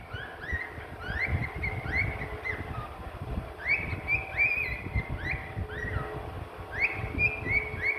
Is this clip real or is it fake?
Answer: real